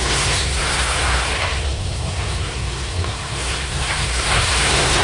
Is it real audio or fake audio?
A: fake